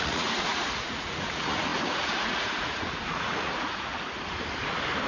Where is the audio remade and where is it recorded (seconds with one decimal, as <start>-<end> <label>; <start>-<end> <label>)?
0.0-3.9 remade; 3.9-5.1 recorded